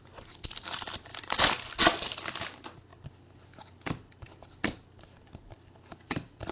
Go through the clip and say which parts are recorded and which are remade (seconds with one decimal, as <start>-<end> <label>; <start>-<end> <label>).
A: 0.0-6.5 recorded